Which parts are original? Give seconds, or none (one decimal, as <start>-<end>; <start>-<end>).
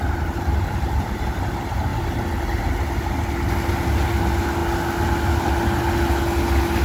0.0-6.8